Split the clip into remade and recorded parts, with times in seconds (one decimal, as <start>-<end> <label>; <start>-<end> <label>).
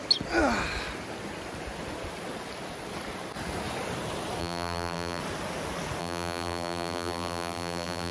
0.0-4.4 recorded; 4.4-5.2 remade; 5.2-6.0 recorded; 6.0-8.1 remade